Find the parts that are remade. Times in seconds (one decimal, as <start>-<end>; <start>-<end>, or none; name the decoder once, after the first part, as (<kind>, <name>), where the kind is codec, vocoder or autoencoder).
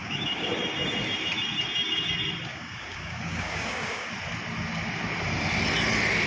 0.0-0.5 (codec, DAC); 2.5-4.1